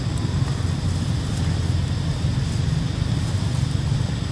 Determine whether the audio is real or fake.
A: real